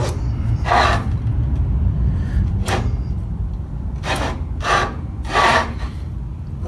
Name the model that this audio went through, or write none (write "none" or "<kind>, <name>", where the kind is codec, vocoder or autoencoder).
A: vocoder, BigVGAN v2